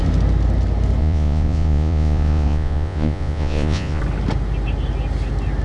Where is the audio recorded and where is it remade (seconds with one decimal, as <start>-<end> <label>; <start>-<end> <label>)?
0.0-1.0 recorded; 1.0-4.0 remade; 4.0-5.6 recorded